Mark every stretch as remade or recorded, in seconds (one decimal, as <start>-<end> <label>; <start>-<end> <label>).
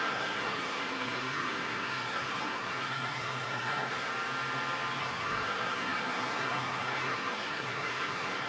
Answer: 0.0-4.1 remade; 4.1-5.0 recorded; 5.0-8.5 remade